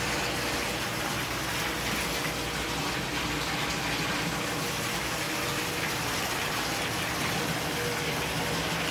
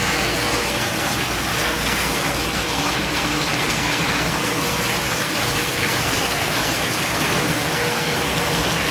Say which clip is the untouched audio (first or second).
first